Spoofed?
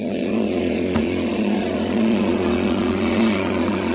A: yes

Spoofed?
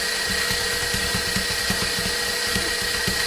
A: no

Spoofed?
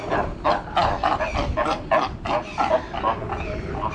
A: no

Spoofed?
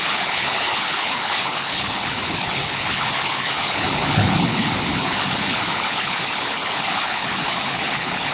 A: yes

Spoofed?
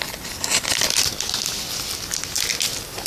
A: no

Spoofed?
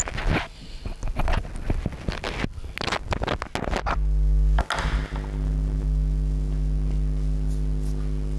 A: no